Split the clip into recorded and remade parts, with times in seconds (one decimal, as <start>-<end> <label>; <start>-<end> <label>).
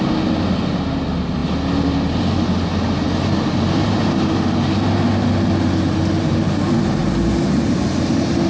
0.0-8.5 recorded